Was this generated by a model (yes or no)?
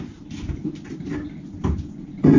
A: no